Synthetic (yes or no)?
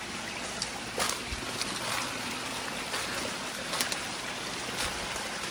no